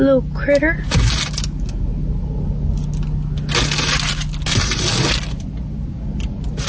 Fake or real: real